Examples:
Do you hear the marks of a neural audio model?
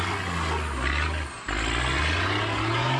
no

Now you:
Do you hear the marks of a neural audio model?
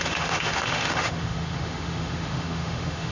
yes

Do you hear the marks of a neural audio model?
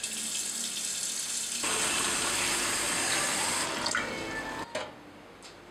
no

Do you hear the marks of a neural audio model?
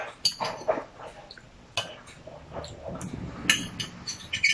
no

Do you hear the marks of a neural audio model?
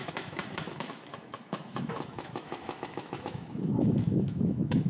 yes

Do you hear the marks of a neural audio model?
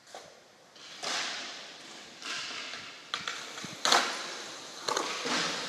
no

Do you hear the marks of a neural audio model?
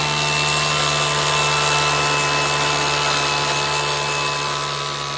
no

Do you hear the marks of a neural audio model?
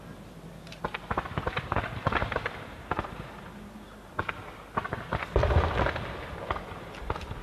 no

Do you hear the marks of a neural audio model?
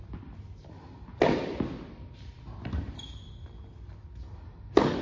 no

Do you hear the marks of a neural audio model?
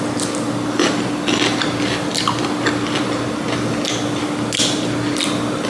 no